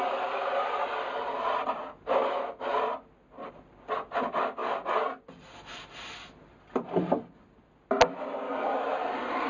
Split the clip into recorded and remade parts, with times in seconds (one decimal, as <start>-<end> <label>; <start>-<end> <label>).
0.0-9.5 recorded